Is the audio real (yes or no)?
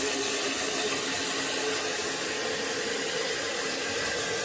yes